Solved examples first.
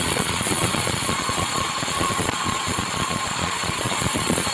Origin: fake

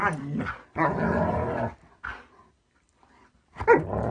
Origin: real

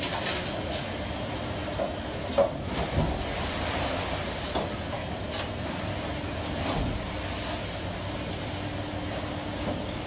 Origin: real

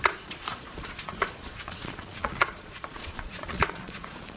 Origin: fake